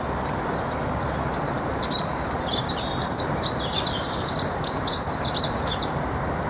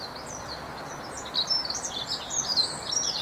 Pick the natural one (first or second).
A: second